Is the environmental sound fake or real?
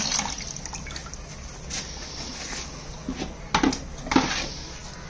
real